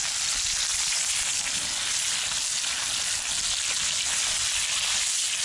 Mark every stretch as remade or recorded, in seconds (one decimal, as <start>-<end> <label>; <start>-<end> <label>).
0.0-5.4 recorded